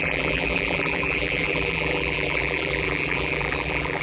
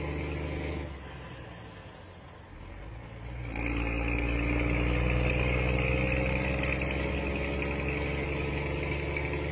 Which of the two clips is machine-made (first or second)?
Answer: first